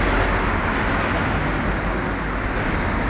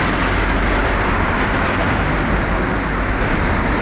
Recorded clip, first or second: first